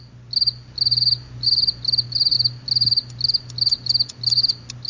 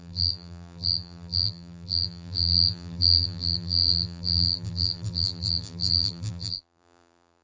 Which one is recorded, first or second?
first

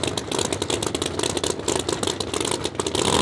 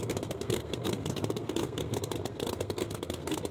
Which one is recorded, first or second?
first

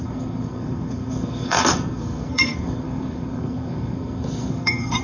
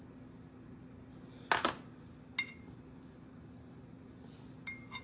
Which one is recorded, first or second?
second